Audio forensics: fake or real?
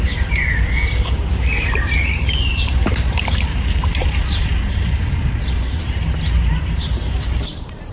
fake